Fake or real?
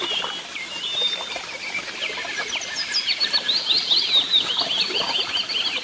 real